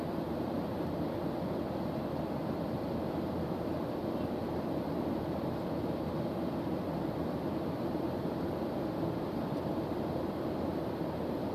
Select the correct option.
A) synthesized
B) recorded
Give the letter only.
A